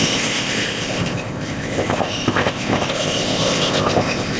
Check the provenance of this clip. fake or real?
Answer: fake